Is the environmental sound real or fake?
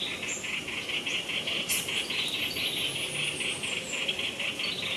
real